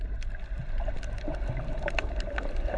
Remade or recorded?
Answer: recorded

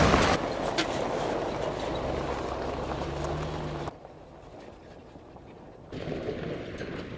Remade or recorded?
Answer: recorded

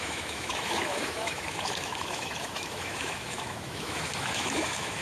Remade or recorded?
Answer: remade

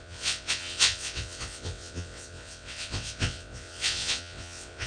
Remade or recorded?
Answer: remade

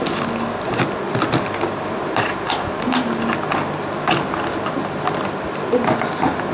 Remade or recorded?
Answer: recorded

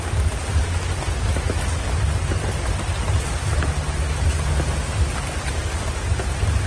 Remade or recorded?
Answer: recorded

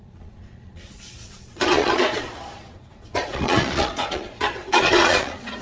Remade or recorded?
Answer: remade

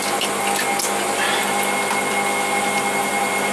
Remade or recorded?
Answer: recorded